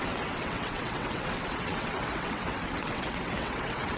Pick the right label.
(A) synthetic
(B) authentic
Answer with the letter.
A